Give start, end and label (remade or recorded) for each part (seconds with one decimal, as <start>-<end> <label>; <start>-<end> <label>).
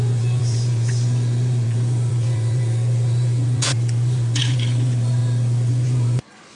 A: 0.0-5.2 remade; 5.2-5.7 recorded; 5.7-6.6 remade